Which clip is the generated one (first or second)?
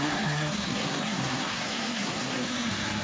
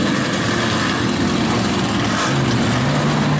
first